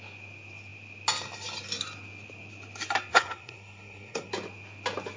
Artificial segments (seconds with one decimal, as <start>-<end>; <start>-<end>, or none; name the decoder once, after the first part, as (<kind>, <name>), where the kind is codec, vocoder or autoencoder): 3.1-4.3 (codec, SNAC)